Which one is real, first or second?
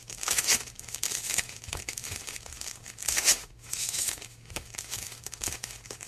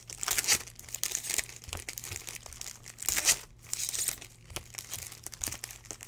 second